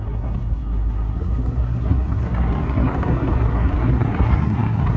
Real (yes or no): no